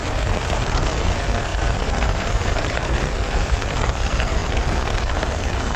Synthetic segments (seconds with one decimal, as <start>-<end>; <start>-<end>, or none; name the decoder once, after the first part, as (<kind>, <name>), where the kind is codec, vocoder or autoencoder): 0.0-5.8 (codec, SNAC)